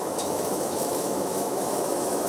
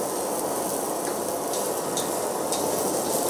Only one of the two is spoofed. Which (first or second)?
first